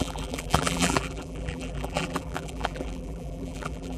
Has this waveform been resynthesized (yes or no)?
yes